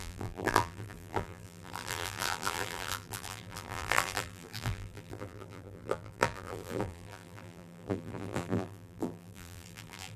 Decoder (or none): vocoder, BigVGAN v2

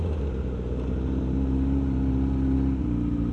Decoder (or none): none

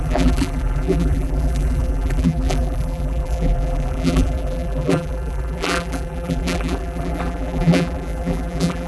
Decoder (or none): vocoder, BigVGAN v2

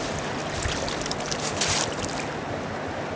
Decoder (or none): none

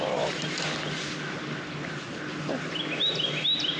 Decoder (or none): none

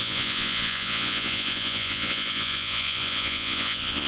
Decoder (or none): vocoder, Vocos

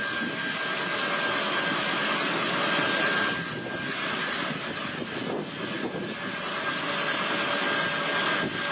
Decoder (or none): none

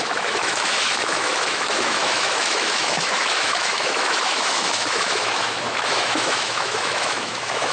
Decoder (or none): autoencoder, DAC-VAE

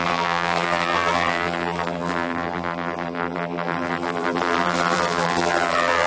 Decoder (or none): vocoder, BigVGAN v2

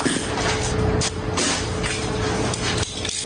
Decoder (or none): none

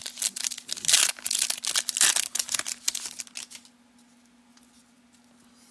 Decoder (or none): none